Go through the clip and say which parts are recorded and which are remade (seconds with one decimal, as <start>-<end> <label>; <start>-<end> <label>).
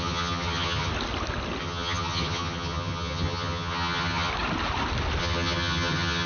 0.0-0.9 remade; 0.9-1.6 recorded; 1.6-4.3 remade; 4.3-5.2 recorded; 5.2-6.3 remade